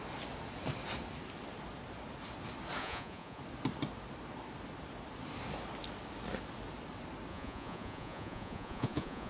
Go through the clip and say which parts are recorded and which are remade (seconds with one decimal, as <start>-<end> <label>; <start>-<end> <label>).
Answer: 0.0-2.8 recorded; 2.8-3.4 remade; 3.4-7.3 recorded; 7.3-9.3 remade